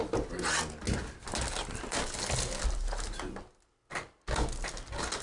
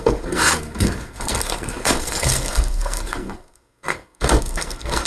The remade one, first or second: second